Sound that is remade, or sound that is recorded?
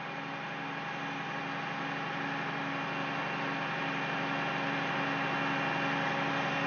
recorded